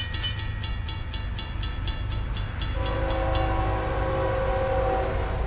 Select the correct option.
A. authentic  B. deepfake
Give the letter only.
A